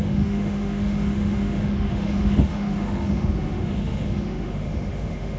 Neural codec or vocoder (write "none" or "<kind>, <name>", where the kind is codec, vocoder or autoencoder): autoencoder, DAC-VAE